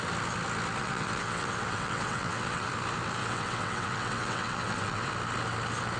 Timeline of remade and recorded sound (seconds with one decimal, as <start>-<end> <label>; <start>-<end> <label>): 0.0-0.8 recorded; 0.8-2.7 remade; 2.7-3.2 recorded; 3.2-5.1 remade; 5.1-6.0 recorded